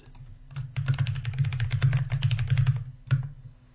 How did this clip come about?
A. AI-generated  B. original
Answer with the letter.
B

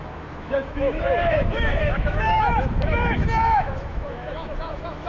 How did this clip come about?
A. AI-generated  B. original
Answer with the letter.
A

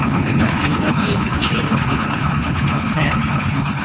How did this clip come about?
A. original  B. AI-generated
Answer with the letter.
B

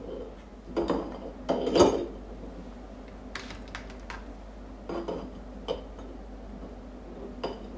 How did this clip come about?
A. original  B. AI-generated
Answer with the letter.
A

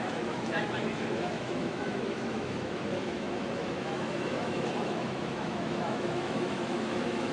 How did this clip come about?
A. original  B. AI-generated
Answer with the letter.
B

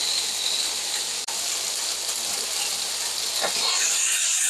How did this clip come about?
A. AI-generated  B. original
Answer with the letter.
B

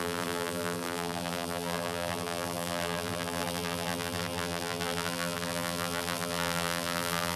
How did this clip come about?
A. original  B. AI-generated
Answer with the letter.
B